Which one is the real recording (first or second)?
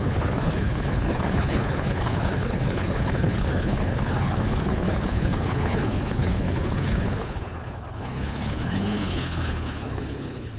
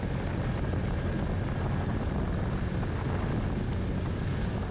second